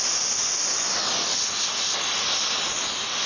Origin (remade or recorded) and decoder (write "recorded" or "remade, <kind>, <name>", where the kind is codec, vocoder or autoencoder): recorded